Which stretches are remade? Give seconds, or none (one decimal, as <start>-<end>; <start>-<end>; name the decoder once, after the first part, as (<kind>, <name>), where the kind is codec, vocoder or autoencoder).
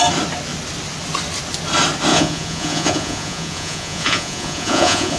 2.1-5.2 (vocoder, Vocos)